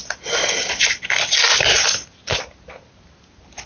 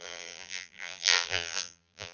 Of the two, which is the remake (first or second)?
second